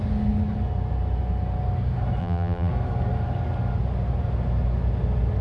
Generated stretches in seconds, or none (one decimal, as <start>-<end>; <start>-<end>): 2.2-2.7

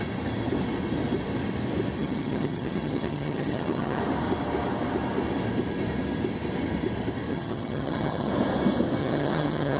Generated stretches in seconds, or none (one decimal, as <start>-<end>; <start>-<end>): 2.0-4.0; 7.3-8.3; 9.0-9.8